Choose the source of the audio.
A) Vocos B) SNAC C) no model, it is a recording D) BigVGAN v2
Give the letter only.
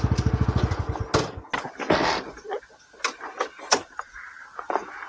C